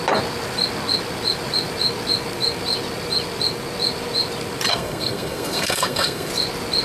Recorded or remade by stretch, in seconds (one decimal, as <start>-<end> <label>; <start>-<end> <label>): 0.0-4.7 recorded; 4.7-6.3 remade; 6.3-6.8 recorded